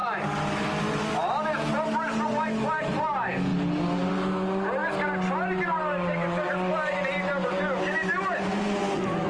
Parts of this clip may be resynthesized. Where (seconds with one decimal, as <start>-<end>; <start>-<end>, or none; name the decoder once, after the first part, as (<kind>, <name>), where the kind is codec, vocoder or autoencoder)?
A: none